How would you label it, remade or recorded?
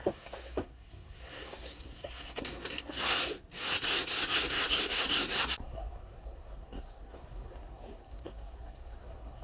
remade